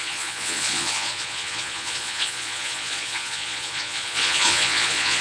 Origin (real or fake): fake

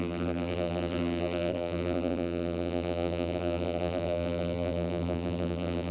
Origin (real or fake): fake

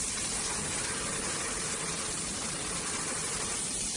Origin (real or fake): real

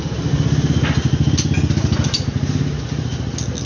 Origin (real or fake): real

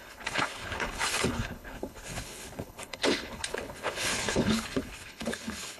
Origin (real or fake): fake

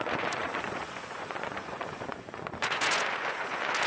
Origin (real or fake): fake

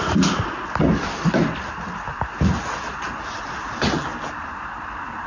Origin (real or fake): real